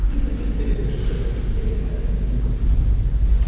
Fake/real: real